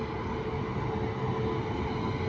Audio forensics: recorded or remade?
recorded